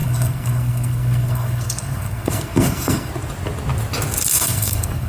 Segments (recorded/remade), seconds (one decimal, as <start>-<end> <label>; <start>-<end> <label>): 0.0-3.1 remade; 3.1-4.3 recorded; 4.3-5.1 remade